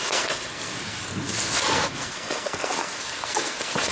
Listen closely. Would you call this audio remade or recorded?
remade